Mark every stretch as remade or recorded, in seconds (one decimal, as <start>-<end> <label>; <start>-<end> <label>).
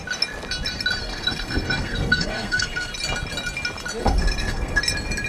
0.0-1.0 recorded; 1.0-2.9 remade; 2.9-4.0 recorded; 4.0-4.8 remade; 4.8-5.3 recorded